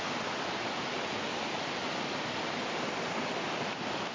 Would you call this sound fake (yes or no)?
no